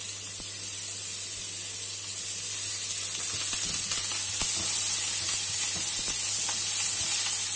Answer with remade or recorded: recorded